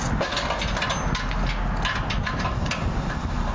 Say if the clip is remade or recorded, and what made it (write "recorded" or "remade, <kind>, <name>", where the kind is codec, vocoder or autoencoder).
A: recorded